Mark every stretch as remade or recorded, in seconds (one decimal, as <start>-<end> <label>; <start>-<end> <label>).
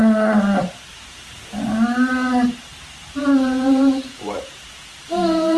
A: 0.0-3.2 recorded; 3.2-5.6 remade